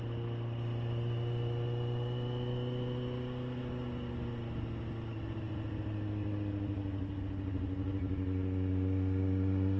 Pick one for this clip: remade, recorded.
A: recorded